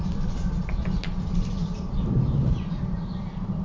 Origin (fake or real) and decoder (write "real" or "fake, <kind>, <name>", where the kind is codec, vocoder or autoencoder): real